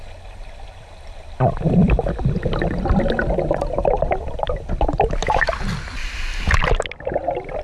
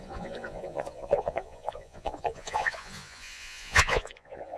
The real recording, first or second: first